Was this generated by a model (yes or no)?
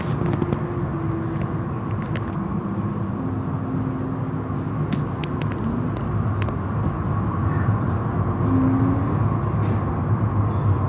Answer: no